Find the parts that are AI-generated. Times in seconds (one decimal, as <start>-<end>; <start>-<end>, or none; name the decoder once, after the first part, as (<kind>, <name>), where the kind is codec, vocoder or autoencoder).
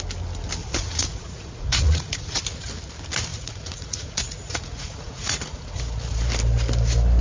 0.6-2.4 (vocoder, Vocos); 3.3-5.8